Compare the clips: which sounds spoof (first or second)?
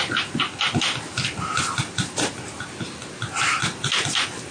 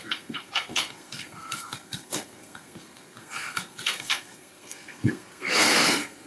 second